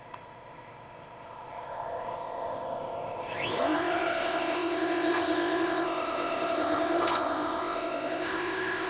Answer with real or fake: fake